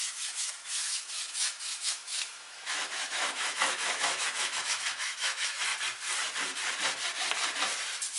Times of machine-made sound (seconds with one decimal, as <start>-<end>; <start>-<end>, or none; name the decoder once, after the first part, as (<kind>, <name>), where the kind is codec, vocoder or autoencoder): 0.0-5.7 (autoencoder, DAC-VAE)